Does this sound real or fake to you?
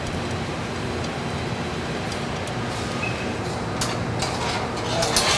real